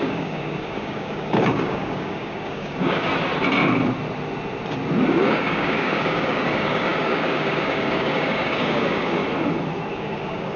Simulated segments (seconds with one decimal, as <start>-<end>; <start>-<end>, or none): 0.0-3.1; 5.1-9.2; 9.9-10.6

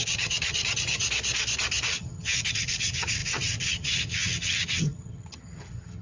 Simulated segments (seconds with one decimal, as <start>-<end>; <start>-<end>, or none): 0.0-1.0; 1.9-6.0

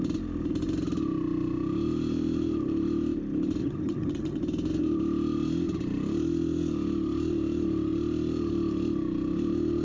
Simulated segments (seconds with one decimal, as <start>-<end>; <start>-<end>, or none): 3.6-4.4

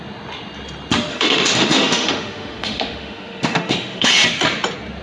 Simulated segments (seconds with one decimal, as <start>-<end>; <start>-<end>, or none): 1.1-4.1

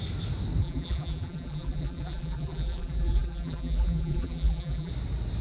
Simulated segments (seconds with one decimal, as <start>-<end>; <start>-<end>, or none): 0.6-4.9

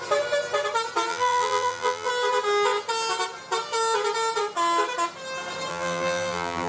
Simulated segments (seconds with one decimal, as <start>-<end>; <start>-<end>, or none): 1.1-2.1; 5.7-6.7